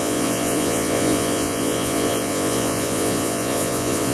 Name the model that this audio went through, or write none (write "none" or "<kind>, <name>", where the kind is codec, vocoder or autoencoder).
vocoder, Vocos